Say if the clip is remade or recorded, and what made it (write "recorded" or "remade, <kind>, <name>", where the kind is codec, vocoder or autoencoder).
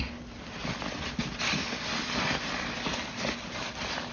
recorded